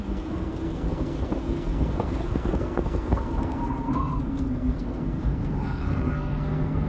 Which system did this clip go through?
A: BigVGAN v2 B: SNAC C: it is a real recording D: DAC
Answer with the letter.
B